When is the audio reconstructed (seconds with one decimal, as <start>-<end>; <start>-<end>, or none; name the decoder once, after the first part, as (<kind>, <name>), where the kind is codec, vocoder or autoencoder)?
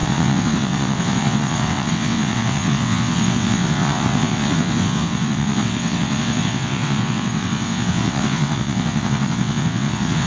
0.0-10.3 (vocoder, WaveNeXt)